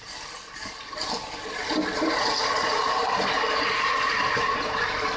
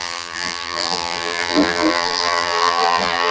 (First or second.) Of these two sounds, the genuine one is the first